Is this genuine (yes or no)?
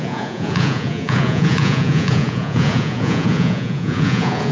no